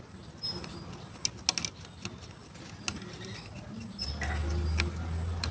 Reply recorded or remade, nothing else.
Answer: recorded